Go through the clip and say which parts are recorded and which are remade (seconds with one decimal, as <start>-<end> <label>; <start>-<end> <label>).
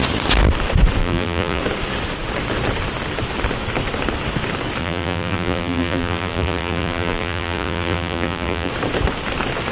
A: 0.0-1.0 recorded; 1.0-1.6 remade; 1.6-4.8 recorded; 4.8-8.7 remade; 8.7-9.7 recorded